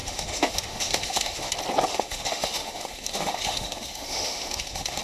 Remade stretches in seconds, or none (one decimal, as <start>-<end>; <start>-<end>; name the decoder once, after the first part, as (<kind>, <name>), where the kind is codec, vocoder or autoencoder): 0.0-1.5 (autoencoder, DAC-VAE); 1.9-5.0